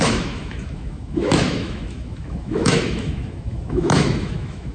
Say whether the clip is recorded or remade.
remade